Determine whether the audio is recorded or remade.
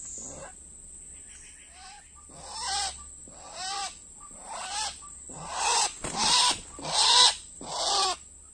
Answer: recorded